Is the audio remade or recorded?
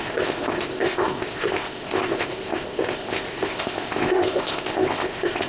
remade